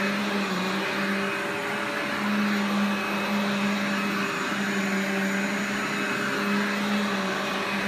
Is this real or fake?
real